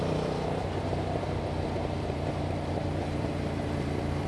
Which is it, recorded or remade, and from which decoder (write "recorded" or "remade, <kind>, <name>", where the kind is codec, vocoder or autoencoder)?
remade, vocoder, BigVGAN v2